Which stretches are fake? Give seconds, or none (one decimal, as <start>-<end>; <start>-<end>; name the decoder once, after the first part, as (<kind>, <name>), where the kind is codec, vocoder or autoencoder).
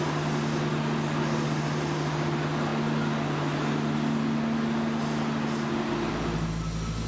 none